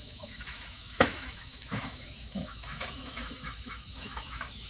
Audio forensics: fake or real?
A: fake